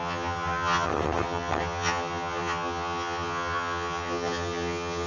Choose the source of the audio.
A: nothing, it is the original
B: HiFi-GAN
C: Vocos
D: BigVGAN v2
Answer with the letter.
B